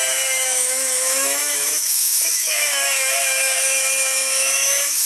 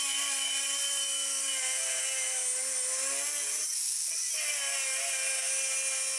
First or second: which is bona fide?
second